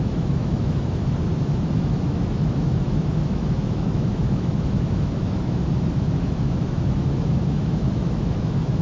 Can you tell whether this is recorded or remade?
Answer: remade